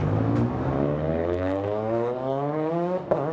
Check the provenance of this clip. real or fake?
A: fake